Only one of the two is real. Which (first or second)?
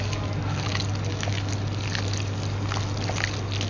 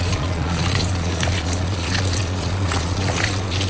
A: first